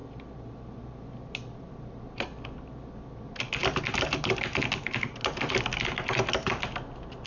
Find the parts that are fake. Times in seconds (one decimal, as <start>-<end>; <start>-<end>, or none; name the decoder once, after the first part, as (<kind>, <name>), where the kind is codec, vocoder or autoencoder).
none